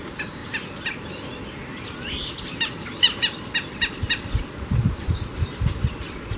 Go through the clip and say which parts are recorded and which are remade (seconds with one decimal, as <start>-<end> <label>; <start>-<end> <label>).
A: 0.0-0.4 recorded; 0.4-2.3 remade; 2.3-2.9 recorded; 2.9-6.0 remade; 6.0-6.4 recorded